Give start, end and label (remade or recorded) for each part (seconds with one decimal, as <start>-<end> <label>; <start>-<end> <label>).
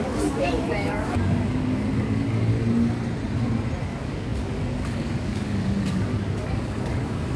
0.0-2.5 remade; 2.5-3.8 recorded; 3.8-7.4 remade